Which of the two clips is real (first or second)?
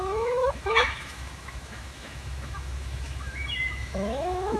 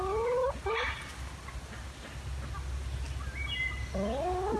second